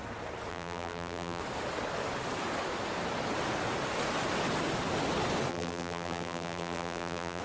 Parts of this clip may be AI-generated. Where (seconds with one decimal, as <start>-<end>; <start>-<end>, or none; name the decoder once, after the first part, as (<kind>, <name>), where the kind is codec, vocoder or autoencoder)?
0.5-1.4 (vocoder, BigVGAN v2); 5.5-7.4

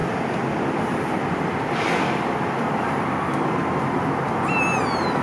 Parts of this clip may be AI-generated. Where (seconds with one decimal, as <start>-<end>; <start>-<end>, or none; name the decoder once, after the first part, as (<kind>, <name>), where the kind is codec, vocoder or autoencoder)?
none

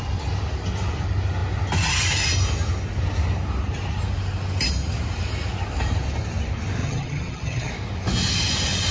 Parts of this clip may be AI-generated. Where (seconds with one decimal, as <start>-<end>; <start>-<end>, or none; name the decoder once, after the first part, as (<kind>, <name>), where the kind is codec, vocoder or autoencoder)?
6.8-7.7 (vocoder, HiFi-GAN)